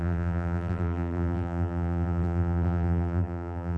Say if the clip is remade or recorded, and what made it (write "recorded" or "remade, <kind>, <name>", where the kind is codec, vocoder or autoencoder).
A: remade, vocoder, BigVGAN v2